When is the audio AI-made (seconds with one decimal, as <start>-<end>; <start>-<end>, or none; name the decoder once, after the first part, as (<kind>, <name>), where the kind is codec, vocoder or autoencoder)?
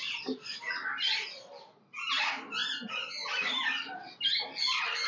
none